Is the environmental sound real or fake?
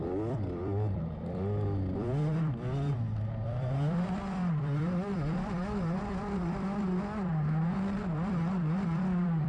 fake